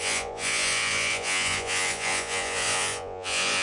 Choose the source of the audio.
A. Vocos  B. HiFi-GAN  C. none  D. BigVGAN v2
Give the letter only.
A